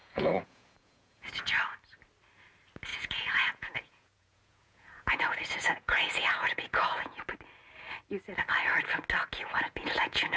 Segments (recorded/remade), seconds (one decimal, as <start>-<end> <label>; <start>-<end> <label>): 0.0-1.3 remade; 1.3-2.9 recorded; 2.9-7.2 remade; 7.2-9.4 recorded; 9.4-10.4 remade